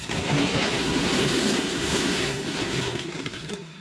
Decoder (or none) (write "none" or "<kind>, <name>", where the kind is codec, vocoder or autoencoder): codec, SNAC